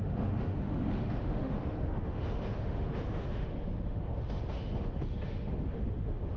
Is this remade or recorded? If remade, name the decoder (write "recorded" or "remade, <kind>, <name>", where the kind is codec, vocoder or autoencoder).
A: remade, autoencoder, DAC-VAE